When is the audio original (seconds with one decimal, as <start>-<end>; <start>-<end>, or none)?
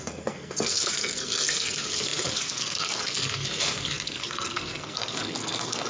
none